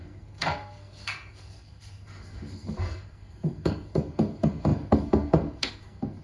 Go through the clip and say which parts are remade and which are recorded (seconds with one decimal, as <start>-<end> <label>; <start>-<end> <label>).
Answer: 0.0-6.2 remade